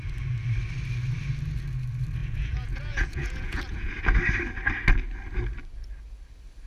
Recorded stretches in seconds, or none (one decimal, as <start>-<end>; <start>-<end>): 0.0-2.2; 3.9-6.7